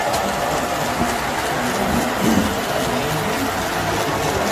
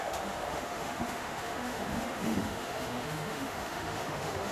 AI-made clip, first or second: second